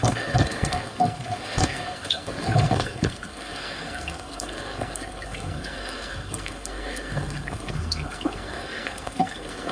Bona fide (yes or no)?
no